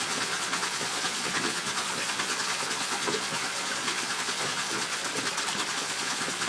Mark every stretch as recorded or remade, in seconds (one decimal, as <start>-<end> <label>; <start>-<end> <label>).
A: 0.0-5.0 remade; 5.0-5.7 recorded; 5.7-6.5 remade